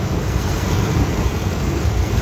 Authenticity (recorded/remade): remade